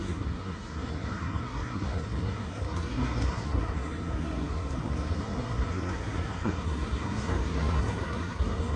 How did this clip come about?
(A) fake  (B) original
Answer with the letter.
A